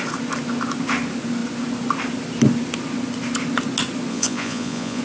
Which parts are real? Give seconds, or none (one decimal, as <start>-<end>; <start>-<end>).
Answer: 0.0-4.1